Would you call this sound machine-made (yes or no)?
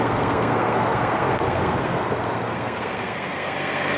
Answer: yes